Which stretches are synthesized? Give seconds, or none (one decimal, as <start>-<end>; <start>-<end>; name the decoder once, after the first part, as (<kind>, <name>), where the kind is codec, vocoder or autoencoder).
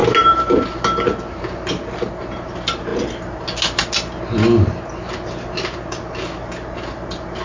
none